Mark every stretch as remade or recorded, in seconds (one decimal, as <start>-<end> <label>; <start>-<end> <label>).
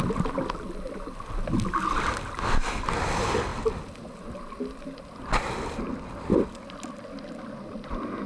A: 0.0-8.3 recorded